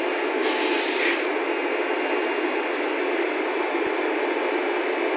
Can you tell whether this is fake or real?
real